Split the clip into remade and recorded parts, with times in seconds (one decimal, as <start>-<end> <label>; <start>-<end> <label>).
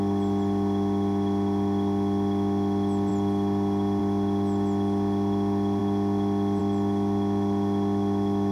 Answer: 0.0-8.5 recorded